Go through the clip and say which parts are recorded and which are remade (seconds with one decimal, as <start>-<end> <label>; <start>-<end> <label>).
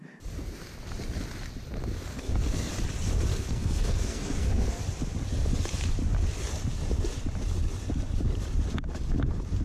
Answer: 0.0-2.1 recorded; 2.1-2.7 remade; 2.7-3.3 recorded; 3.3-4.8 remade; 4.8-9.6 recorded